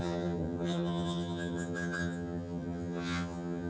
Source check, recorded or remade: remade